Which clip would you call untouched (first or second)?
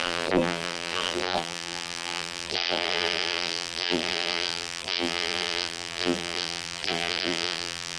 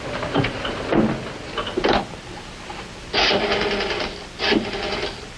second